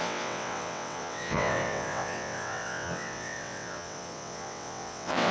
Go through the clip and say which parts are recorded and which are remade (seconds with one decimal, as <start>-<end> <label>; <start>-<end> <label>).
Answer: 0.0-5.3 remade